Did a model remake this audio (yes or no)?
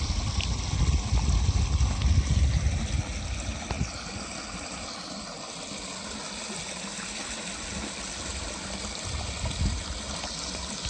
no